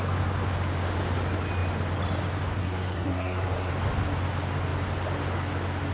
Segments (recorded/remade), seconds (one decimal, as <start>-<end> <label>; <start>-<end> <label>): 0.0-2.6 recorded; 2.6-3.7 remade; 3.7-5.9 recorded